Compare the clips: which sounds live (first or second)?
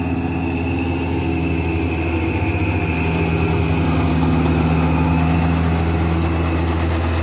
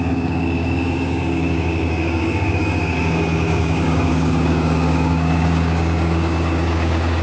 first